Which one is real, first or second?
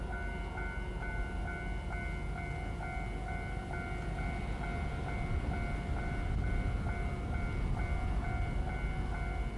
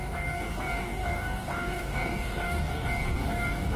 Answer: first